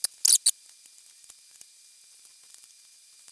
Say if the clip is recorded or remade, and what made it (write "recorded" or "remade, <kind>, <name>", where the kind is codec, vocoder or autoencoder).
recorded